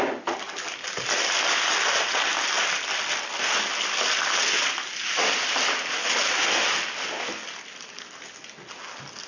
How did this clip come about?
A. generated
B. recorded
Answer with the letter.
B